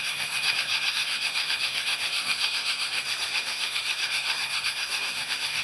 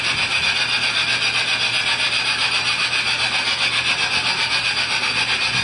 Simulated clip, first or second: first